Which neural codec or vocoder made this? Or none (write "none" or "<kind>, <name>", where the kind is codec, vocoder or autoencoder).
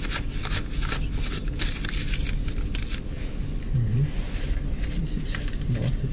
none